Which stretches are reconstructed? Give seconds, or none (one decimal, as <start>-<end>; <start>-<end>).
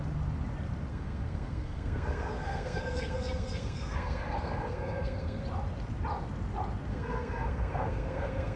0.9-5.4; 6.9-8.6